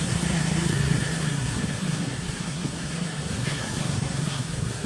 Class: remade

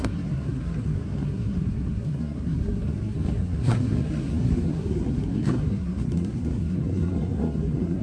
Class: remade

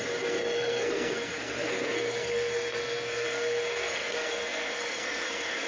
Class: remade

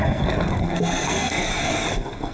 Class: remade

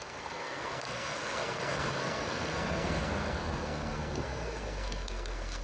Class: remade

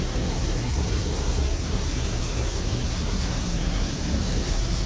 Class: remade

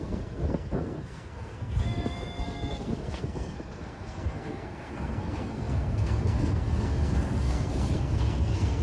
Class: remade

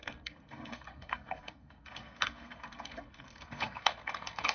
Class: remade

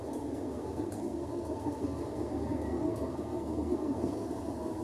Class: remade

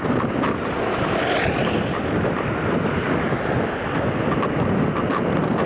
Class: recorded